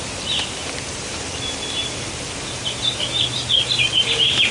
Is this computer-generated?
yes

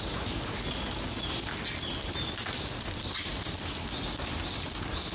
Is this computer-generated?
no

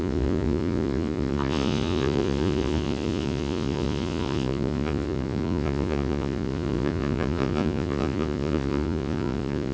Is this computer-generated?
yes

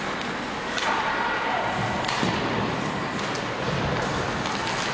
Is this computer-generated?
no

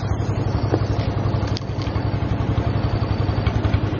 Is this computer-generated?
no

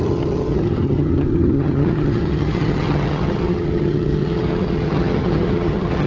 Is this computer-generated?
yes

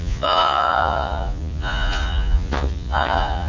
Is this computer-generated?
yes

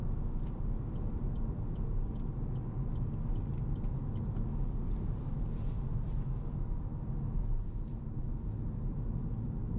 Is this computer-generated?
no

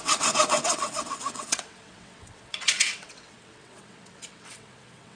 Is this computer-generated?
yes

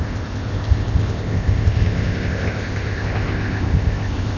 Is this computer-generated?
yes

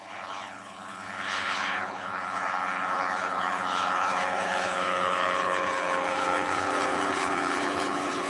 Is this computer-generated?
yes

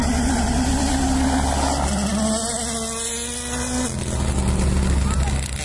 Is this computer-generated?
no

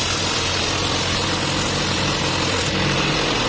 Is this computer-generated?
no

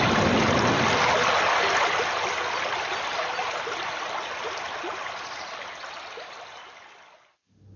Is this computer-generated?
no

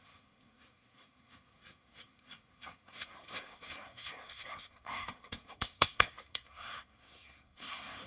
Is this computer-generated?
yes